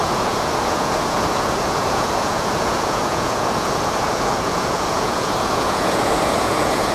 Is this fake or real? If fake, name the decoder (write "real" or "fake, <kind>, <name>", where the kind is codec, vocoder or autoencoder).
fake, vocoder, Vocos